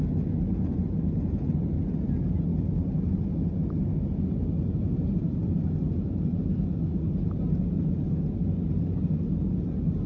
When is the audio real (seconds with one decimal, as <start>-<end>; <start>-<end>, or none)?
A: 0.0-10.1